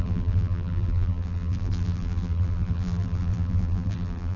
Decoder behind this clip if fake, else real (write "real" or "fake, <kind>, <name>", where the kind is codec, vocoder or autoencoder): fake, vocoder, BigVGAN v2